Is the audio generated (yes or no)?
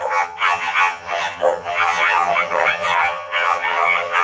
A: yes